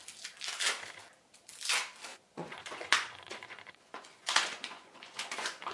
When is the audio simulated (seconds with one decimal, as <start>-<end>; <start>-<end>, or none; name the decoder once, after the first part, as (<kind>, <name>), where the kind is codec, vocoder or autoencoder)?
2.1-5.7 (vocoder, Vocos)